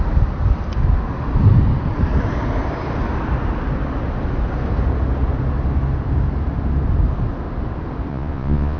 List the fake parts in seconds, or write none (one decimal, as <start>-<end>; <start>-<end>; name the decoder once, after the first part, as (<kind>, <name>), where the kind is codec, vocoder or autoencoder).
8.1-8.8 (vocoder, Vocos)